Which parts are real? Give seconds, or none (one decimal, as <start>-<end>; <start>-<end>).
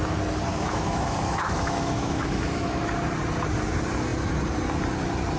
0.0-0.5; 2.8-5.4